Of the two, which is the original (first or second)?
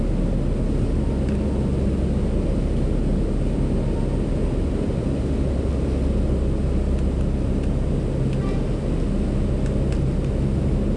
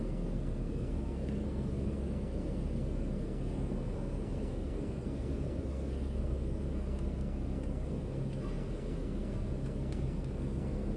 first